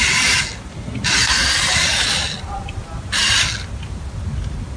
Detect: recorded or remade recorded